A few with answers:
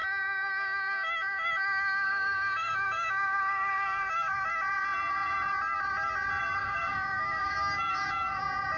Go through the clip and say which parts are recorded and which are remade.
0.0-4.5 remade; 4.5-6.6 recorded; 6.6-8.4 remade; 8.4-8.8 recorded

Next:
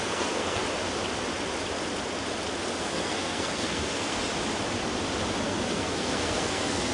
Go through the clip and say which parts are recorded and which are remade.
0.0-0.6 remade; 0.6-2.8 recorded; 2.8-4.3 remade; 4.3-5.4 recorded; 5.4-6.9 remade

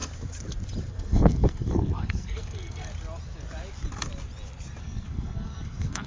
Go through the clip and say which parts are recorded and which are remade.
0.0-0.9 recorded; 0.9-2.9 remade; 2.9-4.8 recorded; 4.8-6.1 remade

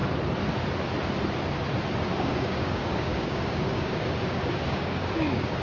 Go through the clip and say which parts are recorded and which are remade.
0.0-2.2 recorded; 2.2-5.6 remade

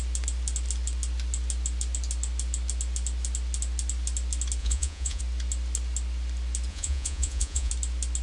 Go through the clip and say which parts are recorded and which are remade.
0.0-4.6 recorded; 4.6-5.2 remade; 5.2-6.7 recorded; 6.7-7.7 remade; 7.7-8.2 recorded